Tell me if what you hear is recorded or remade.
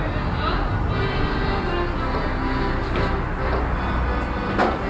recorded